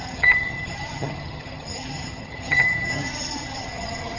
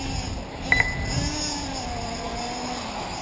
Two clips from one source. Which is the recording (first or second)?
second